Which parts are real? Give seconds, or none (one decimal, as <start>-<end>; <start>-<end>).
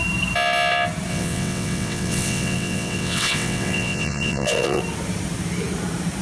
0.0-1.1; 4.8-6.2